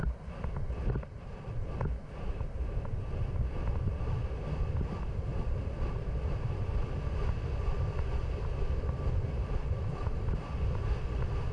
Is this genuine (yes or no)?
yes